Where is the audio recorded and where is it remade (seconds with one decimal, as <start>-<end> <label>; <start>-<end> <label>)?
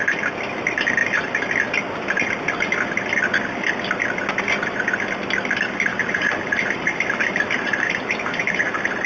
0.0-5.9 recorded; 5.9-7.9 remade; 7.9-9.1 recorded